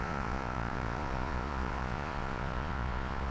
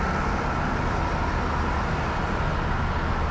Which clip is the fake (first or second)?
first